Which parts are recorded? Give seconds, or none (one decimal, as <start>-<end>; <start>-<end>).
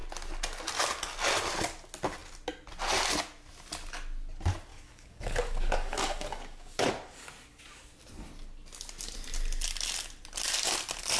0.0-4.7; 6.9-11.2